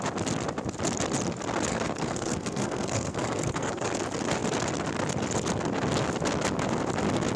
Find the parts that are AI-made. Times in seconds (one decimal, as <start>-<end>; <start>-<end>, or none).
1.7-3.9

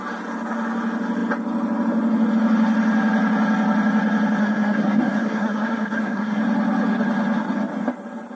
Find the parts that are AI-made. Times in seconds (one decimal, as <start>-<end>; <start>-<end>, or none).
4.4-6.4

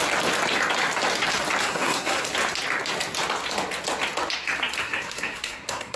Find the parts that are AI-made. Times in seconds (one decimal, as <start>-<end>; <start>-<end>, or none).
1.6-2.2; 4.8-6.0

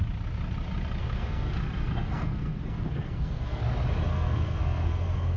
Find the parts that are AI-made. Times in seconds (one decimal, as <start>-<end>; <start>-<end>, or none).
1.0-3.6; 4.1-5.4